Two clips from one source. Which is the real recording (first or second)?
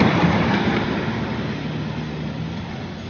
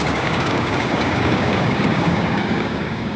first